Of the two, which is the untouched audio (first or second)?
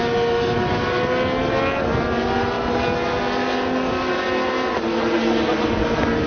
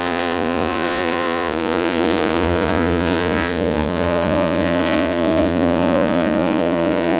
first